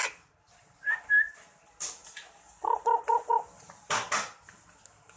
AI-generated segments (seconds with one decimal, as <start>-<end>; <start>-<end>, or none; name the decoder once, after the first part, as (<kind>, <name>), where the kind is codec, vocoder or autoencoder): none